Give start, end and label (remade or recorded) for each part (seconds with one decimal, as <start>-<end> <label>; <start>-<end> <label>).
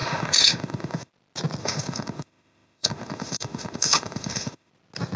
0.0-1.1 remade; 1.1-1.6 recorded; 1.6-4.7 remade; 4.7-5.2 recorded